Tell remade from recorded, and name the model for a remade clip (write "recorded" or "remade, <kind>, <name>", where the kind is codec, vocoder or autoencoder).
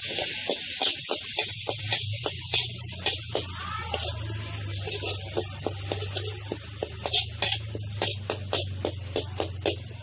recorded